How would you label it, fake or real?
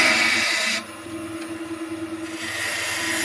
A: real